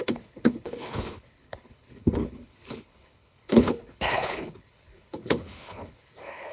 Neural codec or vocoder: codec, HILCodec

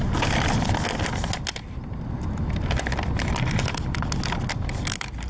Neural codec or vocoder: none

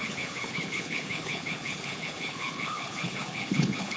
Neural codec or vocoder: codec, HILCodec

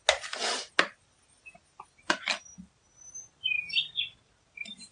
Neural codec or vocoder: none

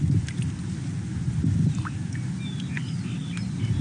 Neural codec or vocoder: none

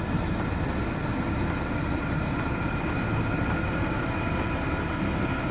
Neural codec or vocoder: none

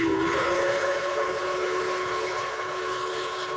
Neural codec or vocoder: codec, HILCodec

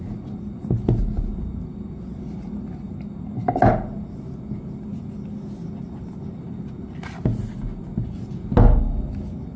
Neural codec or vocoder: none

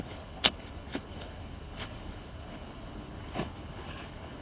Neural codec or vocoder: codec, HILCodec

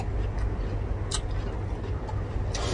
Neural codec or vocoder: none